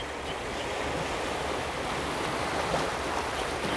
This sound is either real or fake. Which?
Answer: real